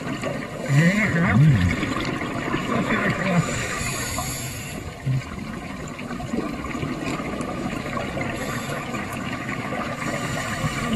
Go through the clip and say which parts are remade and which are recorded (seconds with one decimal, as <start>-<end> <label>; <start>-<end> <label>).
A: 0.0-2.6 recorded; 2.6-4.6 remade; 4.6-7.1 recorded; 7.1-7.9 remade; 7.9-8.4 recorded; 8.4-10.0 remade; 10.0-11.0 recorded